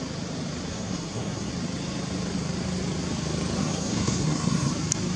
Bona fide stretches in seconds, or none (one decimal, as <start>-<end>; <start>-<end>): 0.0-0.7; 1.5-3.6; 4.7-5.2